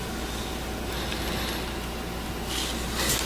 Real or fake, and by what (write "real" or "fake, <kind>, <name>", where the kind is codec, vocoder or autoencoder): real